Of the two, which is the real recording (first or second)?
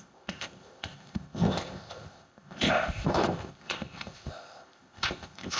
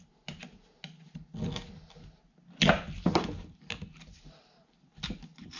second